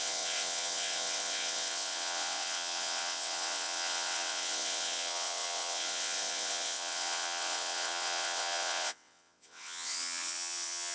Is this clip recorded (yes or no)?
no